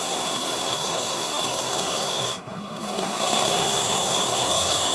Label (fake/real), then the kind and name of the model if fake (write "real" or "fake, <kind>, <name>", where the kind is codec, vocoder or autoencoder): fake, codec, SNAC